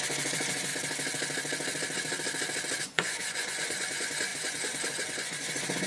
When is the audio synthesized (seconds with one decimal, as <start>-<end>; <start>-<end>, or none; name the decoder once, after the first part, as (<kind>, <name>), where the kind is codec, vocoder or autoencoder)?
0.0-0.7 (vocoder, Vocos); 2.8-5.9